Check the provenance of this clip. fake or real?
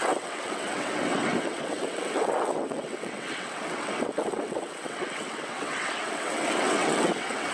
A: fake